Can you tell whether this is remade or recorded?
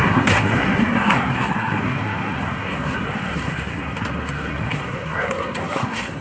remade